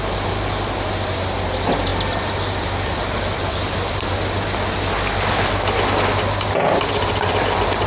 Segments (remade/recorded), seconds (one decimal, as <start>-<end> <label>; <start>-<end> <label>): 0.0-7.9 recorded